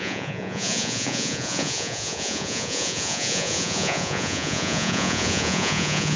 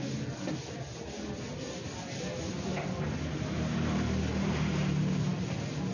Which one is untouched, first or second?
second